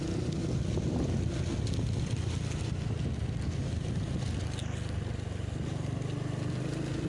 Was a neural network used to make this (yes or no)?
no